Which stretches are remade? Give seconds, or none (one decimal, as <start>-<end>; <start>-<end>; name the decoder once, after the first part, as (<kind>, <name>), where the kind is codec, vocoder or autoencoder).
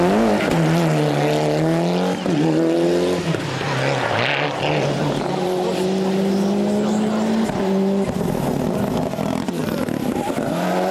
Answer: 9.6-10.5 (vocoder, BigVGAN v2)